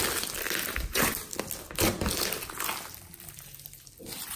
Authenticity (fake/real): real